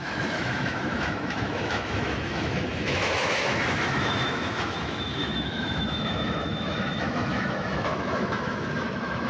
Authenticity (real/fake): fake